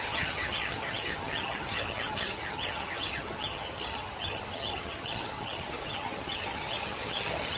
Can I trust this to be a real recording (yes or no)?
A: no